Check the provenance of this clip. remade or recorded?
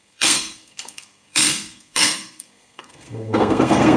remade